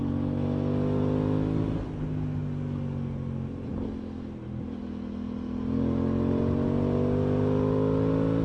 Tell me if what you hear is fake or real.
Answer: real